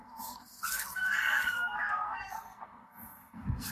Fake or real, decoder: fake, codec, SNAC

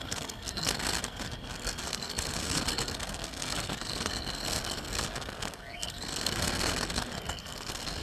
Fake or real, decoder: fake, codec, SNAC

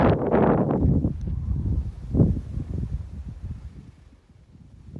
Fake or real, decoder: real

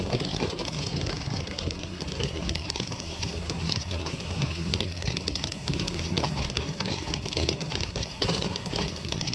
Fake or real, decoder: fake, codec, SNAC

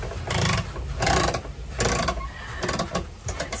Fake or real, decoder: real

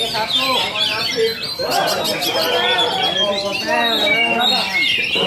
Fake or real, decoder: real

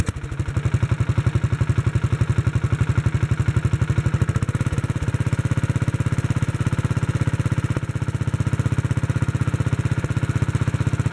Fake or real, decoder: real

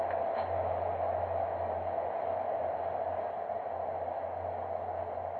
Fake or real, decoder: real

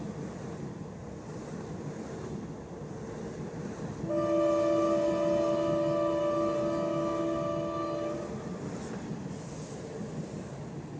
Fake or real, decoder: real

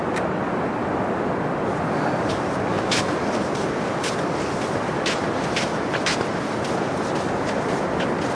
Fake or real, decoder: real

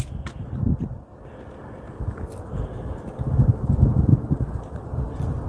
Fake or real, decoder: real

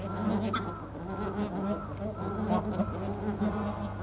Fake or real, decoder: real